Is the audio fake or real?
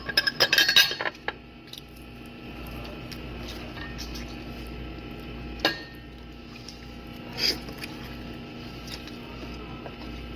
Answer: real